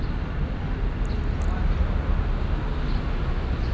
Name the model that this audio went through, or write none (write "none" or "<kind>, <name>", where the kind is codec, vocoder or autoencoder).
none